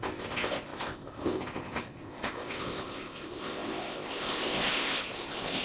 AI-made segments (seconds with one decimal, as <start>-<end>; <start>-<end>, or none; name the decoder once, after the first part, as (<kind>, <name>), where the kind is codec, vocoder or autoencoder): 0.0-5.6 (codec, ZipCodec)